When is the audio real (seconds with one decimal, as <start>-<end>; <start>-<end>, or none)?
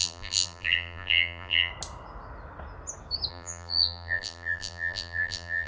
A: 1.7-3.3